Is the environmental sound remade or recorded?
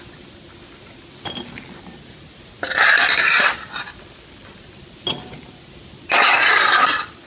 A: recorded